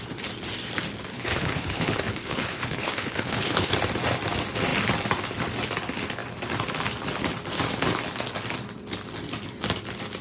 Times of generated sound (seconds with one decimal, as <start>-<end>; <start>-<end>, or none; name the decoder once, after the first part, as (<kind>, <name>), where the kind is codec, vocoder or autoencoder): 1.1-3.7 (codec, HILCodec)